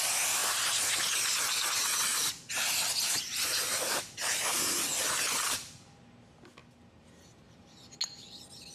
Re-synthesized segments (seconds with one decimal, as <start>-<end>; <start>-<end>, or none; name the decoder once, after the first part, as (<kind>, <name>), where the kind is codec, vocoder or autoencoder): none